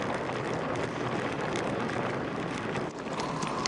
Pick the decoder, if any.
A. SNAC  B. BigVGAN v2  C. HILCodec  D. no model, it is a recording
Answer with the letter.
D